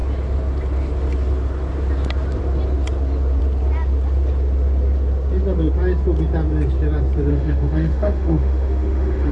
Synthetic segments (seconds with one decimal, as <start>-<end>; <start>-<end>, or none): 7.3-9.3